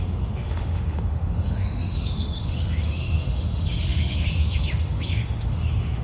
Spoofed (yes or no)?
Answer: yes